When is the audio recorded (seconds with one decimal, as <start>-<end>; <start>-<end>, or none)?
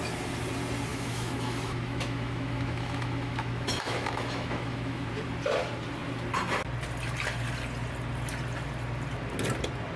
0.0-0.9; 5.1-10.0